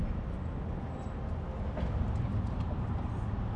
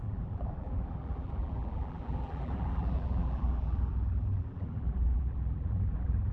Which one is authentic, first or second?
first